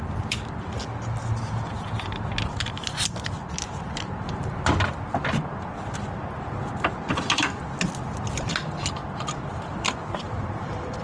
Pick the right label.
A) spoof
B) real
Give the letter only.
B